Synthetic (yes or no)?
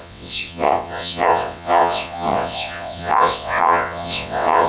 yes